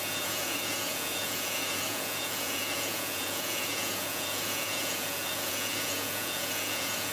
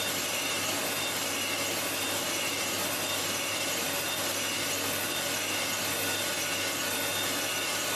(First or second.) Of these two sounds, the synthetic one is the first